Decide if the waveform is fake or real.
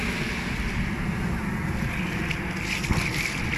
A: real